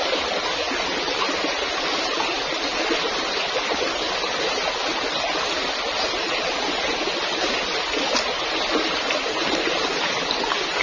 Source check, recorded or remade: recorded